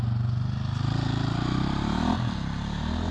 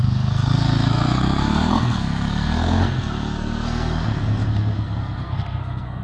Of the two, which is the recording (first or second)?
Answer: first